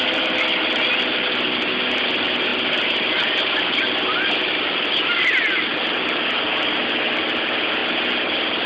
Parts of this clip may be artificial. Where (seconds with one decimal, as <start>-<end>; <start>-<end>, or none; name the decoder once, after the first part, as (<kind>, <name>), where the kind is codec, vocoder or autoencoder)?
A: none